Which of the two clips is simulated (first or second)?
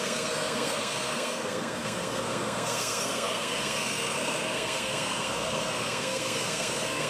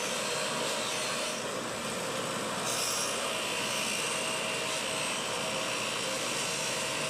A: first